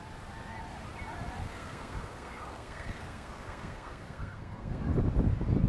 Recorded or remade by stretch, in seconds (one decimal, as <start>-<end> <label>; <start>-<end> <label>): 0.0-1.4 recorded; 1.4-4.8 remade; 4.8-5.7 recorded